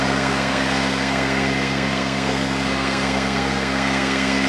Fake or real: fake